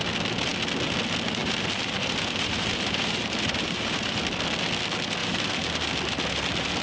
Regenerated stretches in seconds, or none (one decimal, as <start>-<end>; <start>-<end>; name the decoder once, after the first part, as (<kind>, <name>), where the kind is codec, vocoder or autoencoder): 1.4-4.2 (vocoder, BigVGAN v2); 5.2-5.9